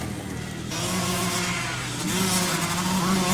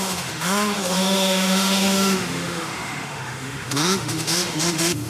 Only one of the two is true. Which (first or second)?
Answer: first